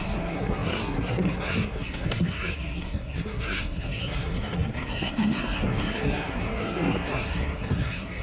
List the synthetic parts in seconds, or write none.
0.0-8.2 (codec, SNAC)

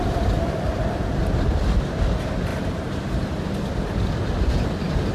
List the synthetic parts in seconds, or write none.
none

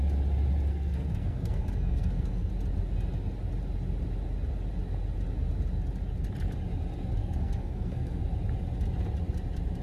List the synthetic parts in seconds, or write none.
0.7-2.5 (codec, SNAC); 7.2-8.2

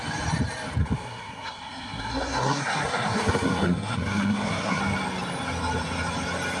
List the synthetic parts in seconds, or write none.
0.8-4.8 (codec, SNAC)